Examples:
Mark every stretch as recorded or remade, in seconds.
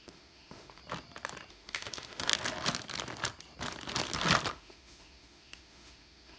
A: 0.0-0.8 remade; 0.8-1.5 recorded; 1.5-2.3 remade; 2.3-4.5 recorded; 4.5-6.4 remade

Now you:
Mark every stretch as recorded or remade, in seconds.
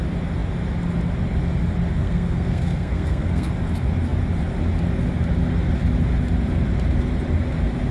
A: 0.0-2.0 recorded; 2.0-3.5 remade; 3.5-7.9 recorded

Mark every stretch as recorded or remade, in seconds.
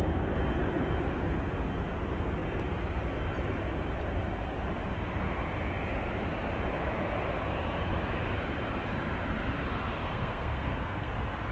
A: 0.0-10.0 recorded; 10.0-11.1 remade; 11.1-11.5 recorded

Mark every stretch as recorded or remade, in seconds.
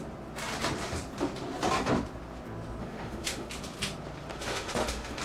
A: 0.0-2.8 recorded; 2.8-3.5 remade; 3.5-4.3 recorded; 4.3-5.2 remade